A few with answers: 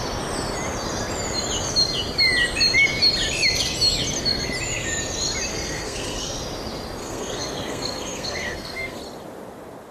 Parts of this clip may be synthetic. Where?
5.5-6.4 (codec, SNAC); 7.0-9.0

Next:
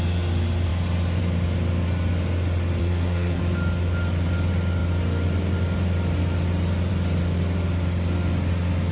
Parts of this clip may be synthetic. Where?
2.8-3.4 (codec, SNAC)